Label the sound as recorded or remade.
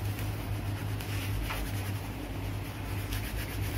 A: recorded